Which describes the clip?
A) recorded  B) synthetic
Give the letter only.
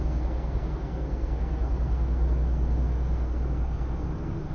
B